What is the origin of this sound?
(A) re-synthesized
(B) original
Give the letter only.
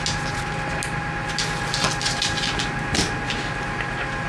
B